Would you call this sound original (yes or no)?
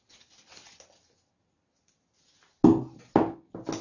yes